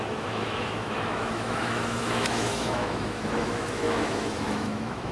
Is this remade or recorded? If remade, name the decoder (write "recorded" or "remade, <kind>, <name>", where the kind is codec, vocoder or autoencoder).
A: remade, autoencoder, DAC-VAE